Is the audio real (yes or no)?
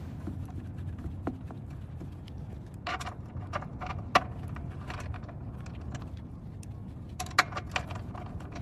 yes